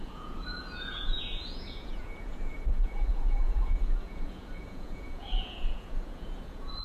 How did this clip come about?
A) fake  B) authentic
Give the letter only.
A